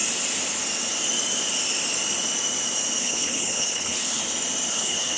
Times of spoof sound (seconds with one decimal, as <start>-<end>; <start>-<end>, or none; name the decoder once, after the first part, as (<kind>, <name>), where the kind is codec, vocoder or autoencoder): 3.0-4.2 (codec, HILCodec); 4.7-5.2